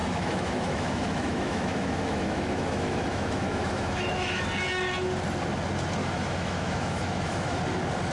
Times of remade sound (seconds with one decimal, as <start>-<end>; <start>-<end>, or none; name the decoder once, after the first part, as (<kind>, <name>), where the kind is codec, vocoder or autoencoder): 0.0-4.4 (autoencoder, DAC-VAE); 6.0-7.6